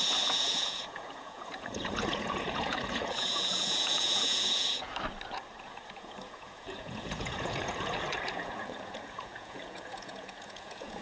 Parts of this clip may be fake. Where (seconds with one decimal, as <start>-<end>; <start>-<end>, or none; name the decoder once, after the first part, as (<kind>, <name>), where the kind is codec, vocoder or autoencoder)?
0.0-4.9 (vocoder, Vocos); 5.6-11.0